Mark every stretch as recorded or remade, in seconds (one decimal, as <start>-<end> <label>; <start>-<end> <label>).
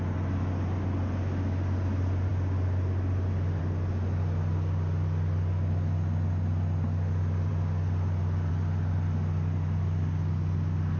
0.0-11.0 recorded